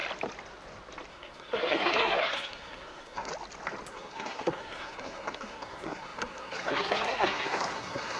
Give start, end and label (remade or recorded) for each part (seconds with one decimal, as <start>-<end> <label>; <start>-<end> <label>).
0.0-1.1 recorded; 1.1-3.3 remade; 3.3-3.9 recorded; 3.9-8.2 remade